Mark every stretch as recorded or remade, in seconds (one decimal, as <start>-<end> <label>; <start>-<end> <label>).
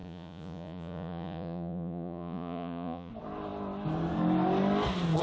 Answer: 0.0-3.1 remade; 3.1-5.2 recorded